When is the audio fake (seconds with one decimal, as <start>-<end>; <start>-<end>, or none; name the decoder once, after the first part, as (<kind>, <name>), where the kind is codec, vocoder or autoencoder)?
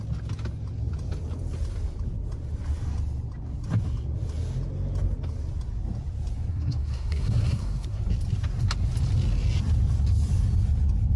6.5-8.0 (codec, SNAC)